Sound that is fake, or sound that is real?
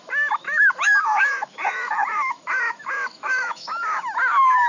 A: fake